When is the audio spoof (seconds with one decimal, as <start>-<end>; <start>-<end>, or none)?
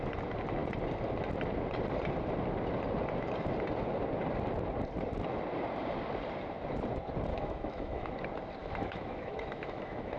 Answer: 7.3-8.1; 8.6-10.2